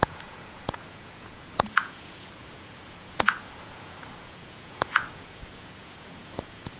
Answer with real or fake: fake